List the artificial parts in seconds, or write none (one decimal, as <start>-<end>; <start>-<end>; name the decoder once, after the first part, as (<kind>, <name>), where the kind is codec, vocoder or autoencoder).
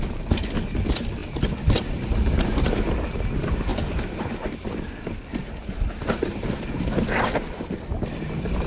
1.2-2.9 (vocoder, BigVGAN v2); 3.7-4.3; 5.4-7.9